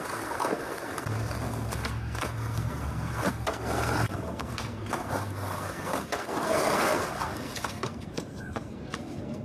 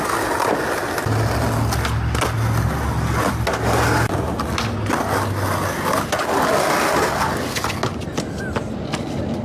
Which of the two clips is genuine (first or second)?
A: second